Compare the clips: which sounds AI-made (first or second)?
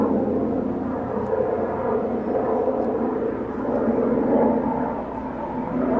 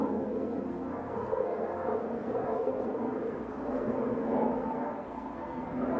second